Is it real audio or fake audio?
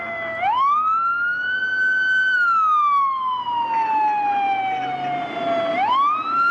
real